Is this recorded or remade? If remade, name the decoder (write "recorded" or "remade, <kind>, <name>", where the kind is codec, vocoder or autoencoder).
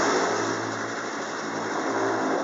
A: recorded